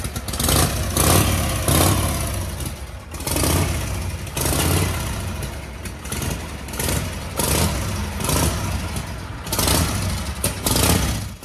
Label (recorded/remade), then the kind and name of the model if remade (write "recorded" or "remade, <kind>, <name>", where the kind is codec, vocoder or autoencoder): recorded